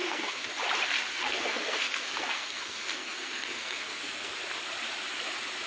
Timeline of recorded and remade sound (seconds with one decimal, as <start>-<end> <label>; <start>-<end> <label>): 0.0-0.5 remade; 0.5-1.1 recorded; 1.1-4.3 remade; 4.3-5.7 recorded